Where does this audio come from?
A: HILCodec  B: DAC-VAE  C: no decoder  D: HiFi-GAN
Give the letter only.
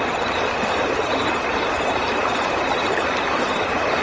C